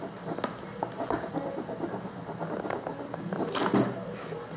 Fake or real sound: real